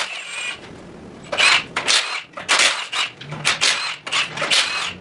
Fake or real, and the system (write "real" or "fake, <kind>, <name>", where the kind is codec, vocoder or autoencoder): real